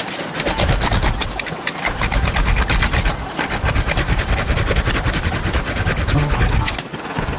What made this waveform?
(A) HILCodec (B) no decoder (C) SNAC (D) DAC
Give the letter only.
B